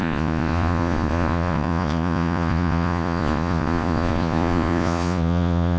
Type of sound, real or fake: fake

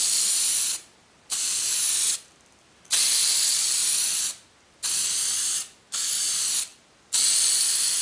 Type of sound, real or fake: real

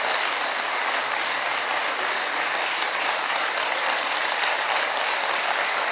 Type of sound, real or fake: real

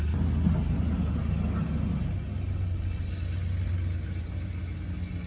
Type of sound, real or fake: real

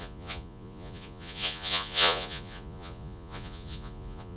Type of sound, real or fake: fake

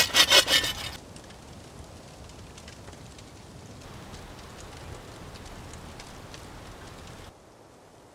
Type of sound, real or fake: real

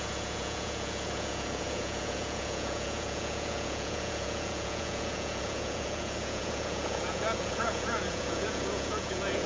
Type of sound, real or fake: fake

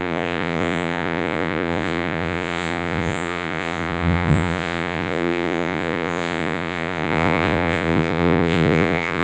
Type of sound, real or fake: fake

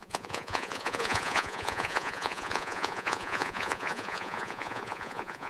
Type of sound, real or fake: fake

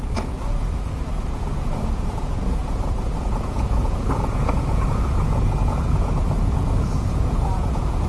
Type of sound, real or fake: fake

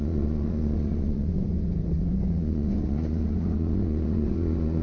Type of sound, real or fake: fake